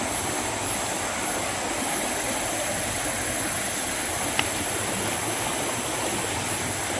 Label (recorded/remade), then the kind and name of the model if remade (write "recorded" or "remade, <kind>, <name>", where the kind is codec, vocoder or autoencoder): recorded